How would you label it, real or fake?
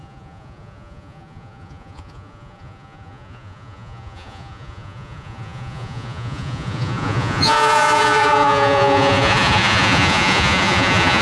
fake